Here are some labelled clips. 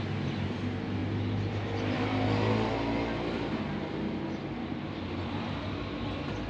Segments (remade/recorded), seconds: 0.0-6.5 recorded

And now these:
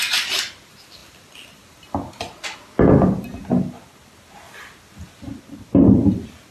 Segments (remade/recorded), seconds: 0.0-6.5 recorded

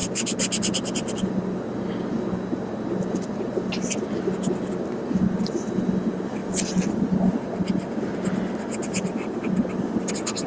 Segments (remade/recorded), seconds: 0.0-10.5 recorded

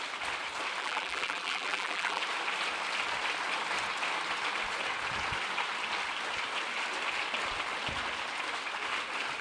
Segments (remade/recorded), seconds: 0.0-0.8 recorded; 0.8-2.2 remade; 2.2-9.4 recorded

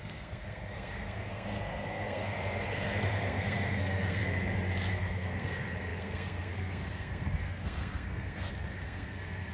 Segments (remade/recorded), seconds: 0.0-4.2 remade; 4.2-4.9 recorded; 4.9-9.5 remade